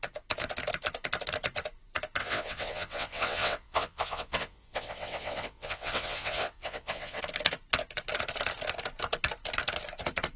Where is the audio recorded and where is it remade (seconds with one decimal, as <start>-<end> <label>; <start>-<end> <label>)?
0.0-2.2 recorded; 2.2-7.2 remade; 7.2-10.4 recorded